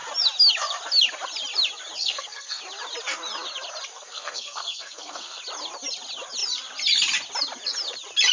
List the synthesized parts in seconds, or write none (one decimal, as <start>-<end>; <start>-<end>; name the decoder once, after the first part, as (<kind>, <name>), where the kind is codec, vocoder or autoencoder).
2.0-2.6 (codec, SNAC); 3.9-5.4